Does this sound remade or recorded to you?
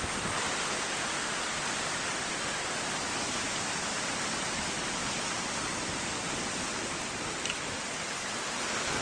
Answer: recorded